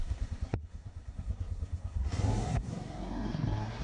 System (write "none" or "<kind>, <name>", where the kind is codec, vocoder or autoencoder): codec, SNAC